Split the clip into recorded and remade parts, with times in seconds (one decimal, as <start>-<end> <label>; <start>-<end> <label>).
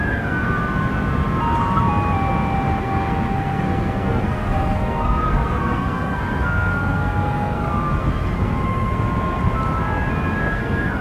0.0-0.6 remade; 0.6-2.8 recorded; 2.8-9.4 remade; 9.4-10.4 recorded; 10.4-11.0 remade